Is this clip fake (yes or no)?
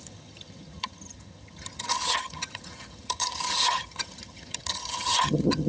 yes